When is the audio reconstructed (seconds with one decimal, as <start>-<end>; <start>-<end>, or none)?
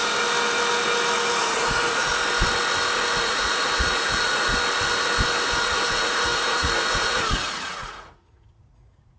1.4-2.1; 3.2-4.5; 5.6-9.2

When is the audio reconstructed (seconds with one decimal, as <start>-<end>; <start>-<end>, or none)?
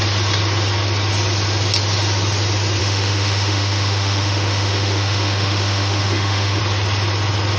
2.8-6.6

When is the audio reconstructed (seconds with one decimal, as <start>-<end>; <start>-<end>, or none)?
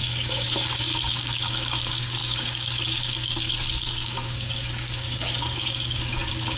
0.0-6.6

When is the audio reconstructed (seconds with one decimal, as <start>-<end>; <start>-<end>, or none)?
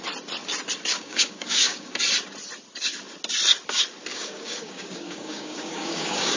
0.9-1.9; 4.1-6.4